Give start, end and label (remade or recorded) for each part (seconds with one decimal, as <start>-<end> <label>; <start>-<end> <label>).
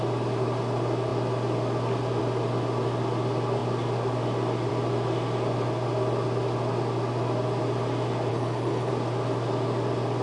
0.0-8.3 recorded; 8.3-8.9 remade; 8.9-10.2 recorded